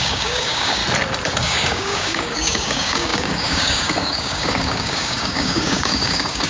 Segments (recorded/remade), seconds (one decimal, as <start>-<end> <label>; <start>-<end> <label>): 0.0-0.8 remade; 0.8-1.4 recorded; 1.4-6.5 remade